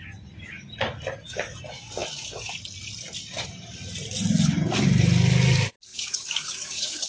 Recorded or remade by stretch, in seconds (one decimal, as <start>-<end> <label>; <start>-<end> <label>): 0.0-5.9 recorded; 5.9-7.1 remade